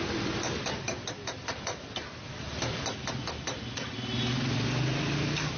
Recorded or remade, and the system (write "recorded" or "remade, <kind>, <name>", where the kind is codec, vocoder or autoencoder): recorded